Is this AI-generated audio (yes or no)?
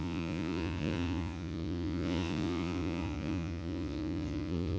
yes